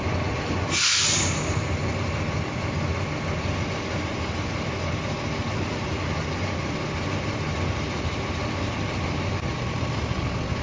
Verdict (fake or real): fake